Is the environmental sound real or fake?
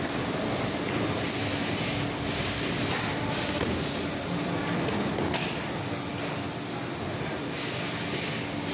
real